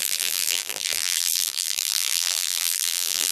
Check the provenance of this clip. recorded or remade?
remade